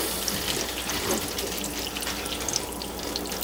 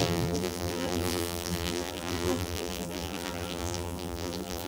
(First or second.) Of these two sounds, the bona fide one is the first